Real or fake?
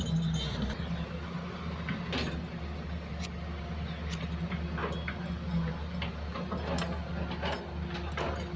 real